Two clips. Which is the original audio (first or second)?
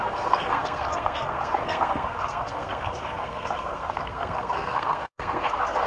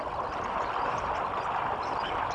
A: second